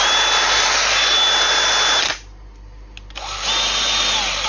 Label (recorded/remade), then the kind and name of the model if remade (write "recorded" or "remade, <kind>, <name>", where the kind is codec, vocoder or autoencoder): recorded